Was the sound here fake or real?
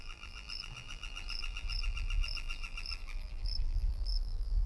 fake